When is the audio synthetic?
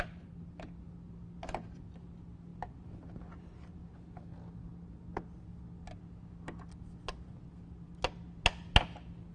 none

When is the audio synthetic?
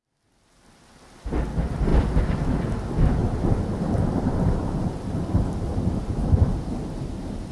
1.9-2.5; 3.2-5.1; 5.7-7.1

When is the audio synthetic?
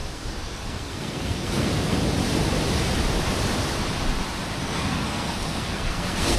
0.0-2.0; 4.6-6.4